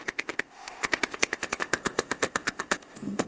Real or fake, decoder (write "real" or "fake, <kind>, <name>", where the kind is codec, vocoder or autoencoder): fake, codec, ZipCodec